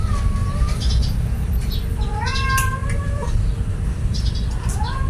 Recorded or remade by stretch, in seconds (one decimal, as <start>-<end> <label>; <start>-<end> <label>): 0.0-0.4 recorded; 0.4-1.5 remade; 1.5-2.8 recorded; 2.8-4.3 remade; 4.3-5.1 recorded